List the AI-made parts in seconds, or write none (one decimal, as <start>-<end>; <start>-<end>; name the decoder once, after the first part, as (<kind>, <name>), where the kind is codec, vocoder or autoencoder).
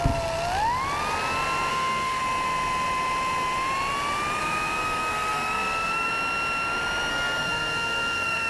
1.7-2.2 (codec, SNAC); 4.4-6.1; 7.1-8.5